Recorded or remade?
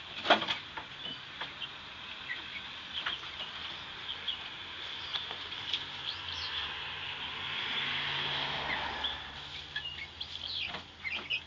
recorded